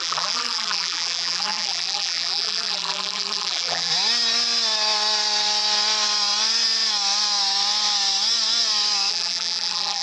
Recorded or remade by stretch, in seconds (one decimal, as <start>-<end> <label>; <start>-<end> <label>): 0.0-3.9 remade; 3.9-9.1 recorded; 9.1-10.0 remade